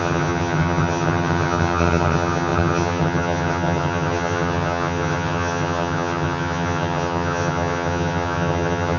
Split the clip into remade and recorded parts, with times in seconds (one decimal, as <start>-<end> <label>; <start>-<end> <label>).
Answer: 0.0-9.0 remade